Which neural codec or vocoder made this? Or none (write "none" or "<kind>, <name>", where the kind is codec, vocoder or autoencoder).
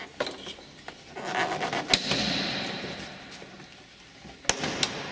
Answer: none